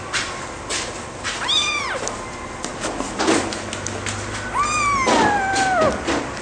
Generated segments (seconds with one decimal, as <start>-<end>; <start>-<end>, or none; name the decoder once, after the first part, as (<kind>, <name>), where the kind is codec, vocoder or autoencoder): none